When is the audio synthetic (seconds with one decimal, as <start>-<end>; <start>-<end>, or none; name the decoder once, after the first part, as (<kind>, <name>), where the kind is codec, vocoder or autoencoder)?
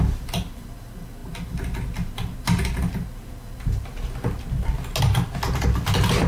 none